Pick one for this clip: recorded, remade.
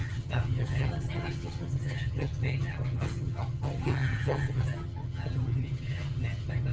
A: remade